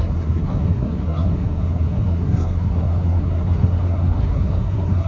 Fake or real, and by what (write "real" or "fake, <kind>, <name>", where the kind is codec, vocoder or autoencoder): fake, codec, SNAC